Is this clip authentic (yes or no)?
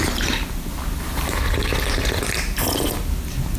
yes